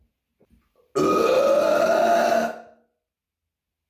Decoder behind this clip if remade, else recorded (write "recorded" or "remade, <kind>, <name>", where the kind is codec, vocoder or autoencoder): recorded